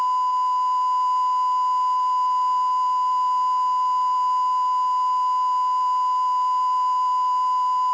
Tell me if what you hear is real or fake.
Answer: real